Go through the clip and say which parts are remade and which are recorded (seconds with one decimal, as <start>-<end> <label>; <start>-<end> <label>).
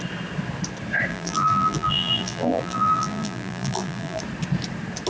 0.0-1.1 recorded; 1.1-4.2 remade; 4.2-5.1 recorded